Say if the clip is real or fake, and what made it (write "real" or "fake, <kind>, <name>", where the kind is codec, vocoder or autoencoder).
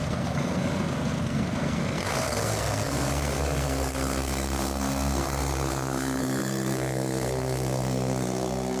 fake, codec, SNAC